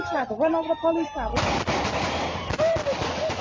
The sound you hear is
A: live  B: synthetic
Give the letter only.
A